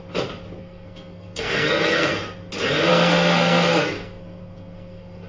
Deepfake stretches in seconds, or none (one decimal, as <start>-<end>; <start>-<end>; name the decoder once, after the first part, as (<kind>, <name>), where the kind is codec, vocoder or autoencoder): 0.6-2.2 (codec, SNAC); 2.9-5.3